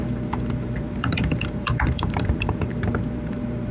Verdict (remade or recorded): remade